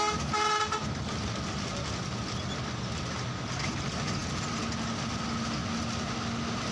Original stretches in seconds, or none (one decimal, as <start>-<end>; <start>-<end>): 0.0-6.7